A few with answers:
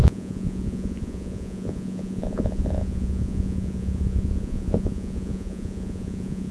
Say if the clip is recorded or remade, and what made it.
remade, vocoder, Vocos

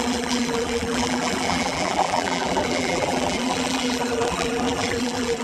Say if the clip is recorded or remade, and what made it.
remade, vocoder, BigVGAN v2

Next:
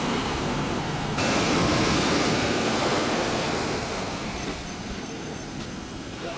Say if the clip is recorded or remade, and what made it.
remade, codec, SNAC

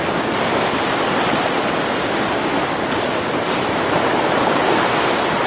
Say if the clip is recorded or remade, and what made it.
recorded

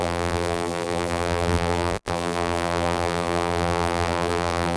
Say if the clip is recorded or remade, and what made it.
remade, vocoder, BigVGAN v2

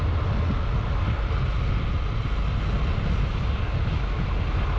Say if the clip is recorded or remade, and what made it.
recorded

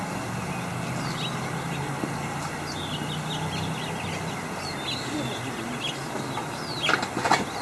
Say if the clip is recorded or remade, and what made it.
recorded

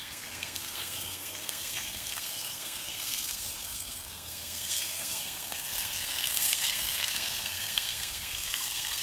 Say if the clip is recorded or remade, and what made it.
remade, codec, SNAC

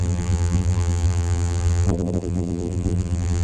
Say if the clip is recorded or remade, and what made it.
remade, vocoder, BigVGAN v2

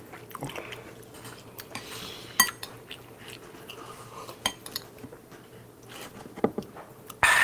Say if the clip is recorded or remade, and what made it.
recorded